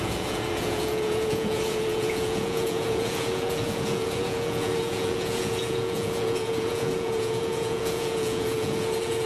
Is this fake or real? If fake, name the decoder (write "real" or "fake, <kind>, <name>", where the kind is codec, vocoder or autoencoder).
fake, vocoder, Vocos